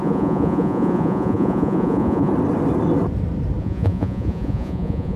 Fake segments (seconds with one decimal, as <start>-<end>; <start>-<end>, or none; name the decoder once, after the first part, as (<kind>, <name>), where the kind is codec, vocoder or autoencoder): 0.0-2.3 (vocoder, Vocos); 3.6-5.2